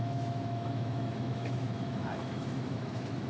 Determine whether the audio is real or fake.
fake